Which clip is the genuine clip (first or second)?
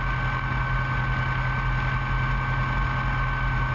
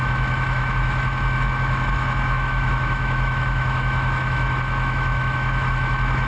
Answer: first